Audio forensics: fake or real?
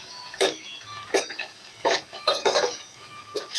fake